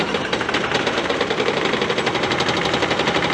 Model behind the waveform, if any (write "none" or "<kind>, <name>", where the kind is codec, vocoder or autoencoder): vocoder, BigVGAN v2